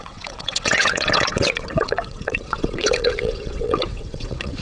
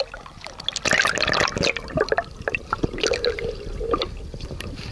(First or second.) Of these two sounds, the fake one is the first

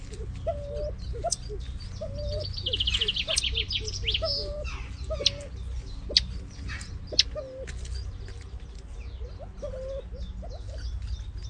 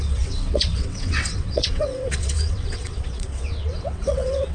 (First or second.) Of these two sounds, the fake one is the second